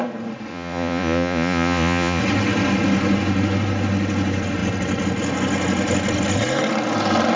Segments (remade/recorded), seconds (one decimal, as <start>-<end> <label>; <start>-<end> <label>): 0.0-0.5 recorded; 0.5-2.2 remade; 2.2-7.4 recorded